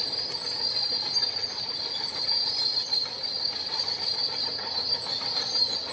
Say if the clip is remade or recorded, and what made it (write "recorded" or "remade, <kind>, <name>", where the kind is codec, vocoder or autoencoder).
recorded